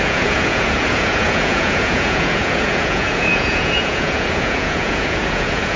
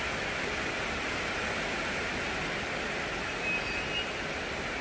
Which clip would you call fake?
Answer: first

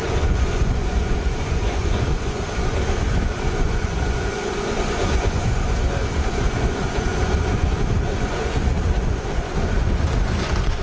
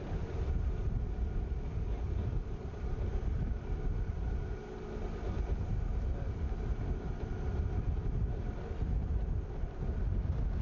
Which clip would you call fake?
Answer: first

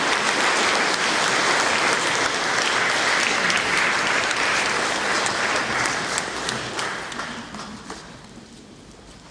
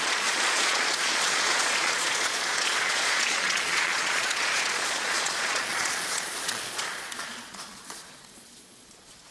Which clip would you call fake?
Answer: second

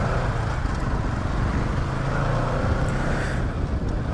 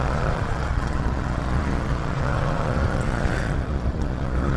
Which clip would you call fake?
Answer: second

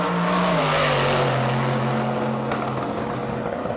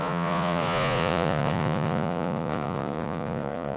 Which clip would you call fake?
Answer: second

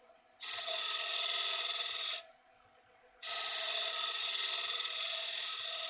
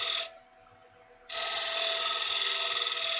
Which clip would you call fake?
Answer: first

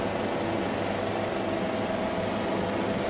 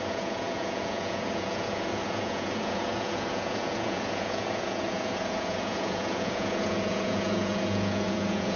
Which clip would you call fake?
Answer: second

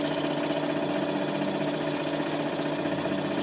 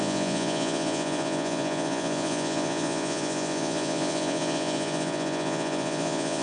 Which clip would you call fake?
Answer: second